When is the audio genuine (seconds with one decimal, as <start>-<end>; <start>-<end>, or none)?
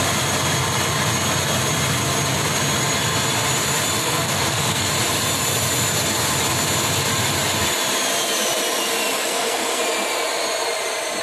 0.0-4.0; 4.9-9.2; 9.8-11.2